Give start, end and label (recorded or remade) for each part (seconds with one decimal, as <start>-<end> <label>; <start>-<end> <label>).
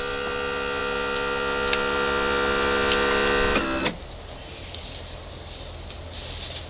0.0-6.7 recorded